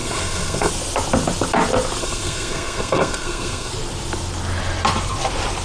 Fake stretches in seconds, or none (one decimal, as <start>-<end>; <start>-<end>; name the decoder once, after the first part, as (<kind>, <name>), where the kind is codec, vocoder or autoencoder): 0.0-0.7 (codec, SNAC); 2.0-3.7

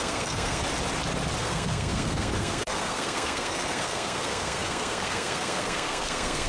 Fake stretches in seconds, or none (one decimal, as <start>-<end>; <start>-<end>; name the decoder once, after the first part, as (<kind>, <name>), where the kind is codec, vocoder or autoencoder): 0.0-0.6 (codec, SNAC); 1.4-6.5

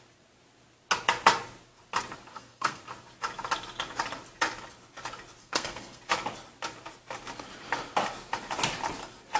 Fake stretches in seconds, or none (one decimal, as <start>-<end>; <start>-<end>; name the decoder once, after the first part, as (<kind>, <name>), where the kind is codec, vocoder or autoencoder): 2.3-2.8 (codec, SNAC); 5.4-6.0

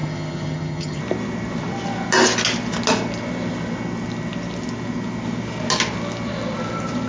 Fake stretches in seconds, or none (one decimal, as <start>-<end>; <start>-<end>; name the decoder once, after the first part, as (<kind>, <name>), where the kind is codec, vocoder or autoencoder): 0.0-1.0 (vocoder, HiFi-GAN)

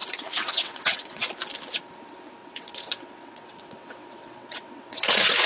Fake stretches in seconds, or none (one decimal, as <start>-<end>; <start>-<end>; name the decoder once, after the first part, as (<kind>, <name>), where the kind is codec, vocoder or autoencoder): 0.0-1.3 (vocoder, WaveNeXt); 2.4-5.5

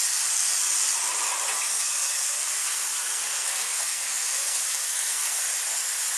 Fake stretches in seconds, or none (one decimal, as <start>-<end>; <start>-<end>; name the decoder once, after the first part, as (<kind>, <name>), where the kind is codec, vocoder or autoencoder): 1.7-5.4 (codec, SNAC)

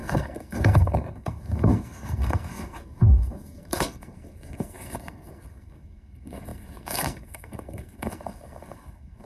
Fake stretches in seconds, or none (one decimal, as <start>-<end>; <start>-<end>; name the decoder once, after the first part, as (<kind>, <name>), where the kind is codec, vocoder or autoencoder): 0.0-9.3 (codec, SNAC)